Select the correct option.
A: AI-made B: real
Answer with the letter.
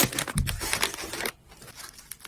B